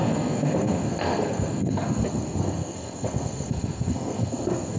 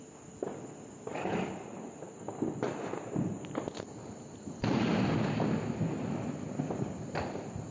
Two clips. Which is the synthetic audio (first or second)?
first